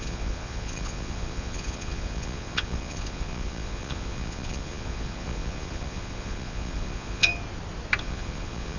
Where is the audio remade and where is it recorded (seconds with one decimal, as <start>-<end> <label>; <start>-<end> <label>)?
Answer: 0.0-7.3 remade; 7.3-8.0 recorded; 8.0-8.8 remade